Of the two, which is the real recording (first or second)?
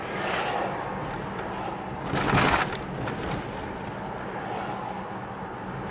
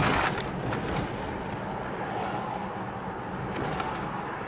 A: first